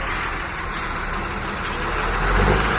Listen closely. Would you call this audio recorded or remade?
recorded